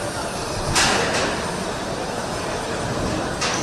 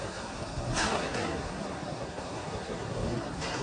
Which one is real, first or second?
first